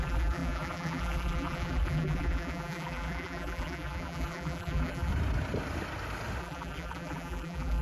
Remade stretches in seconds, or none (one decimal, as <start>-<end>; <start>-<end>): 0.0-5.1; 6.4-7.8